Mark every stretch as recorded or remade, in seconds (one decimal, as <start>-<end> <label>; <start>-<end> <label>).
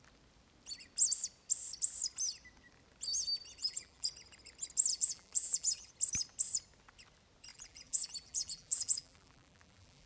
0.0-3.6 recorded; 3.6-4.1 remade; 4.1-4.9 recorded; 4.9-5.9 remade; 5.9-7.5 recorded; 7.5-10.1 remade